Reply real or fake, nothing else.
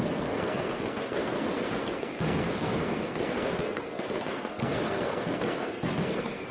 fake